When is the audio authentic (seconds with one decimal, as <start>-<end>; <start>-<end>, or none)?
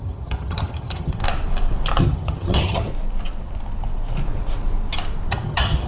1.2-2.0; 2.9-5.3